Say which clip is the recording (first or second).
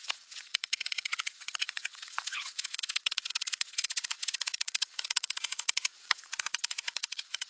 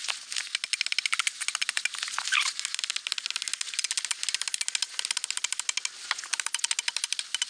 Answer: second